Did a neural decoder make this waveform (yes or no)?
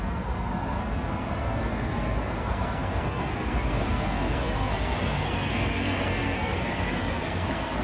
yes